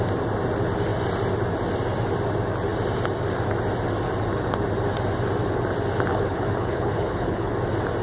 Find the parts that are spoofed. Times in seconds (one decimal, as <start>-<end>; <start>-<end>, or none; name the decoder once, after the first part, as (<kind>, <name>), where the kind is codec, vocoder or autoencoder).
6.1-7.5 (codec, HILCodec)